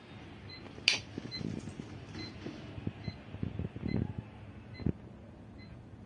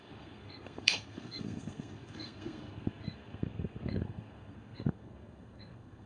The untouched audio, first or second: first